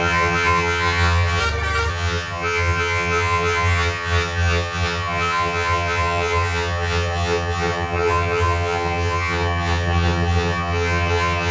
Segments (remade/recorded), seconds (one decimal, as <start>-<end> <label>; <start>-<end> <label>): 0.0-1.4 remade; 1.4-1.9 recorded; 1.9-11.5 remade